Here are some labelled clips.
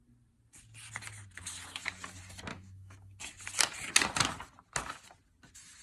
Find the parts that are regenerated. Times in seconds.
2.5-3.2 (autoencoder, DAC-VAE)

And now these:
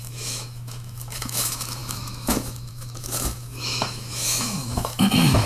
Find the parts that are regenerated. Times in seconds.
0.0-5.5 (autoencoder, DAC-VAE)

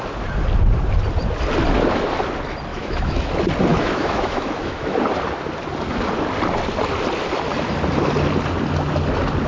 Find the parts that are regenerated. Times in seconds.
2.7-3.3 (autoencoder, DAC-VAE); 3.7-5.0

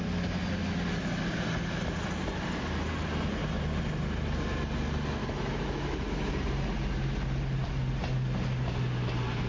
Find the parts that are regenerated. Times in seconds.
5.2-6.3 (autoencoder, DAC-VAE)

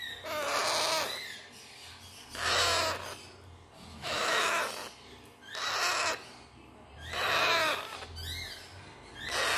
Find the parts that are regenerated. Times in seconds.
3.9-4.6 (autoencoder, DAC-VAE)

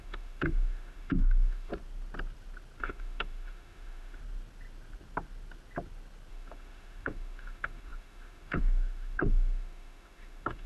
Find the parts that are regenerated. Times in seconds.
0.0-1.7 (autoencoder, DAC-VAE); 2.8-4.2; 6.3-10.7